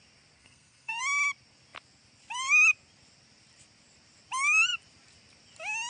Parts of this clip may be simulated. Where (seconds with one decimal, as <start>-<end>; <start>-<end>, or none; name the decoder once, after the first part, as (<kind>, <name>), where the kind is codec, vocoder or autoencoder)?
0.4-1.0 (codec, SNAC)